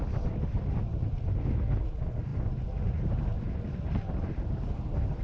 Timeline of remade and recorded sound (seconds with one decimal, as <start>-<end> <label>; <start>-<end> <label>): 0.0-5.2 recorded

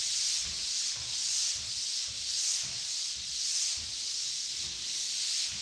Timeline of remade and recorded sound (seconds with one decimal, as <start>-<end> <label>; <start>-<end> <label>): 0.0-5.6 recorded

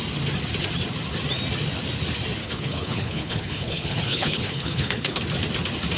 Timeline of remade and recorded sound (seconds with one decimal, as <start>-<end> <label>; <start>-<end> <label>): 0.0-2.4 recorded; 2.4-5.2 remade; 5.2-6.0 recorded

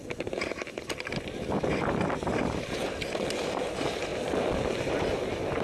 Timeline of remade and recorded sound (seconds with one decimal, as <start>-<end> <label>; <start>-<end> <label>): 0.0-5.6 recorded

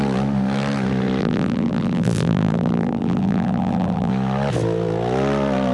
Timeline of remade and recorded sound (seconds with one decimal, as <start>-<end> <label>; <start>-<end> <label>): 0.0-1.2 recorded; 1.2-4.1 remade; 4.1-5.7 recorded

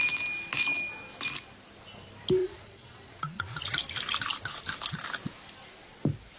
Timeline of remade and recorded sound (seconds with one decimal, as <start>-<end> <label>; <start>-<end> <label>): 0.0-2.4 recorded; 2.4-3.6 remade; 3.6-6.4 recorded

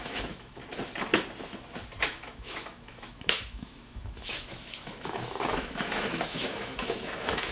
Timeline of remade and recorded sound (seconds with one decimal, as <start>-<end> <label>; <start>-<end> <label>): 0.0-0.6 remade; 0.6-2.0 recorded; 2.0-7.5 remade

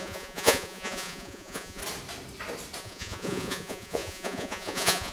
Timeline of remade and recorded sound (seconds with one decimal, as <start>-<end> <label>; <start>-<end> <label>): 0.0-1.8 remade; 1.8-2.8 recorded; 2.8-5.1 remade